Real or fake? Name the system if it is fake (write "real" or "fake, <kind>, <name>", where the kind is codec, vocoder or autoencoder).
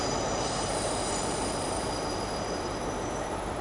fake, vocoder, BigVGAN v2